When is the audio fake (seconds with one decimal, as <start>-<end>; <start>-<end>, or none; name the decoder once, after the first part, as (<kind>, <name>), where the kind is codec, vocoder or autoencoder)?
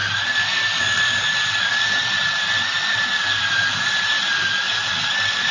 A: none